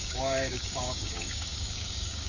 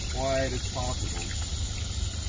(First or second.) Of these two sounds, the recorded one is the second